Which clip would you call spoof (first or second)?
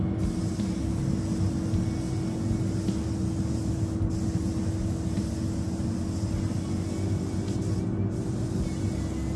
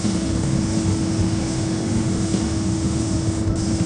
second